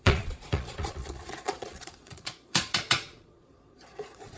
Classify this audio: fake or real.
fake